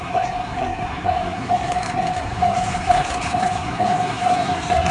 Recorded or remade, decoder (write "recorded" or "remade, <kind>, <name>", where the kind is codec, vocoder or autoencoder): remade, codec, SNAC